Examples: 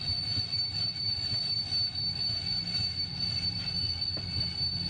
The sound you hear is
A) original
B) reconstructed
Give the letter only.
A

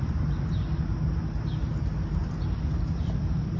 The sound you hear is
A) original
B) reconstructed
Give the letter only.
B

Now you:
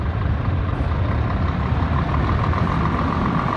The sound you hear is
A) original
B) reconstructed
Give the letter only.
A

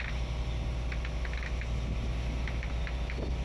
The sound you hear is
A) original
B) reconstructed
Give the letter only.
A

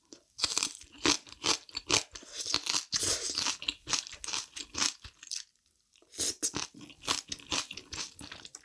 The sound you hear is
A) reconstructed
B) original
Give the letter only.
B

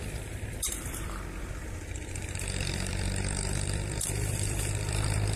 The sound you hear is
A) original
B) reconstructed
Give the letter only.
B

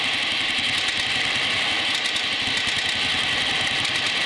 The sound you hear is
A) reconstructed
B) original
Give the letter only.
B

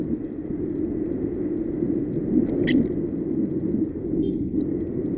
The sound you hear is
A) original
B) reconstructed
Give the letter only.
A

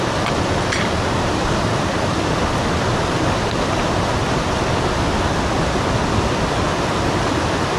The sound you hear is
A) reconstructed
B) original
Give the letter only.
B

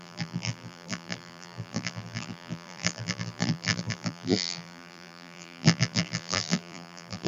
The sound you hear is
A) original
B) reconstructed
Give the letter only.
B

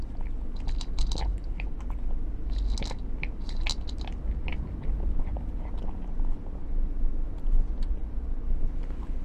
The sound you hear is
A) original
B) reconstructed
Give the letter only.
A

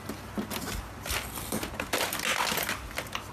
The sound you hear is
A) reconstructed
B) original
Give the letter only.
B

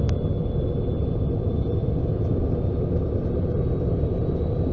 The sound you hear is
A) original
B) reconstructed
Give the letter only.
A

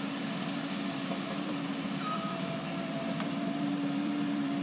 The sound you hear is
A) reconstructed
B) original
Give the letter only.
A